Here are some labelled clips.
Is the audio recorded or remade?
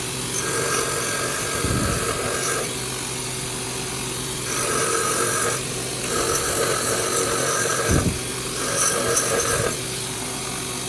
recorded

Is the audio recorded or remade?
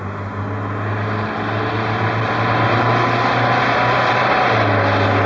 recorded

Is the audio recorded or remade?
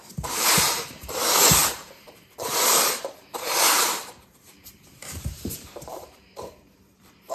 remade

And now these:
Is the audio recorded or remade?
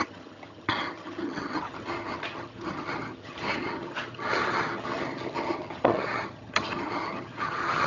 remade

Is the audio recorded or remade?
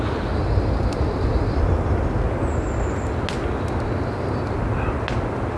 recorded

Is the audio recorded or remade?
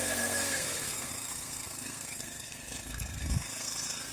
remade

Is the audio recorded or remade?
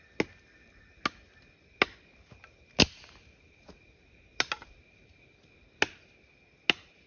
recorded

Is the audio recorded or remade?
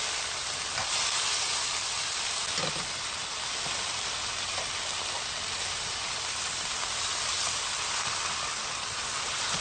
recorded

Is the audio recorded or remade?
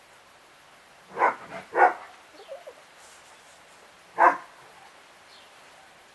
recorded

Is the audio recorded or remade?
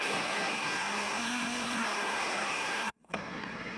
remade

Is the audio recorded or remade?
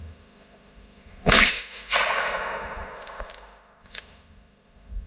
remade